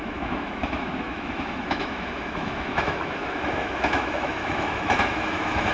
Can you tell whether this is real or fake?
fake